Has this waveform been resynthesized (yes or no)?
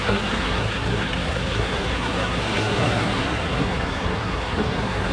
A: yes